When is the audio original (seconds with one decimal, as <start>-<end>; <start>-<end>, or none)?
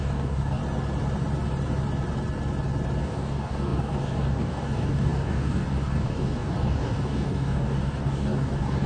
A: 0.6-3.0